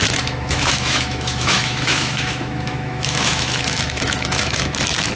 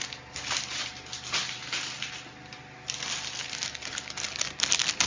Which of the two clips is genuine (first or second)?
second